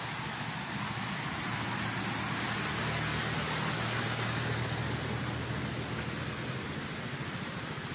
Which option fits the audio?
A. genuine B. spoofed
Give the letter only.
A